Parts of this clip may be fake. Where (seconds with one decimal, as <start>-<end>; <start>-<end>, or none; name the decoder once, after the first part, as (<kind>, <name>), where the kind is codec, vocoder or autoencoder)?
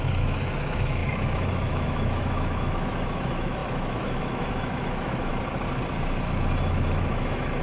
0.0-5.3 (autoencoder, DAC-VAE); 6.6-7.6